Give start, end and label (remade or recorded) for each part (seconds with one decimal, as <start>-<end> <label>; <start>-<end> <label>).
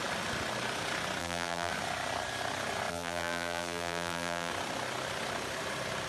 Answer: 0.0-1.2 recorded; 1.2-1.7 remade; 1.7-2.9 recorded; 2.9-4.5 remade; 4.5-6.1 recorded